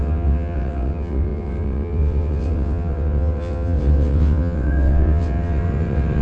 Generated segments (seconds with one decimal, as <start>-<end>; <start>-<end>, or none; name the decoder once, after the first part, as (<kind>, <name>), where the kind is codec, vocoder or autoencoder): 0.0-6.2 (vocoder, WaveNeXt)